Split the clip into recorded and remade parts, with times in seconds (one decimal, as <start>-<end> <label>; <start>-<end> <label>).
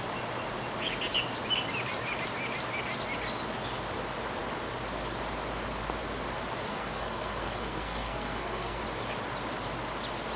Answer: 0.0-6.7 recorded; 6.7-8.8 remade; 8.8-10.4 recorded